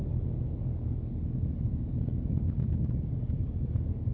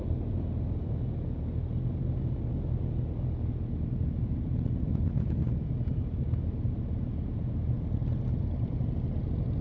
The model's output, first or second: first